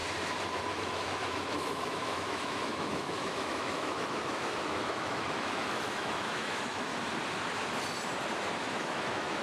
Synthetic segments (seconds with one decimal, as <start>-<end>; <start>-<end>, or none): 0.7-6.9; 8.7-9.4